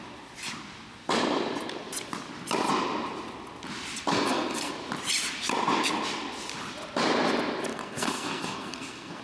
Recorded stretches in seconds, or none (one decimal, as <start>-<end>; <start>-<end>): 0.0-4.1; 4.7-7.7

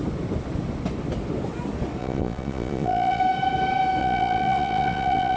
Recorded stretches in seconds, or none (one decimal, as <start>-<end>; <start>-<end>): 0.0-2.0; 3.2-4.0